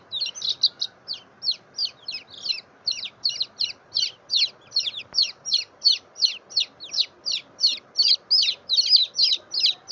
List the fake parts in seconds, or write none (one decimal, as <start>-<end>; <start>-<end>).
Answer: 5.0-5.6